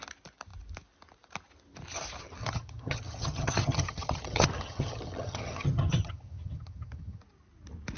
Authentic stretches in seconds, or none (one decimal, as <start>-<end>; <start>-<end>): 0.0-2.4; 7.2-8.0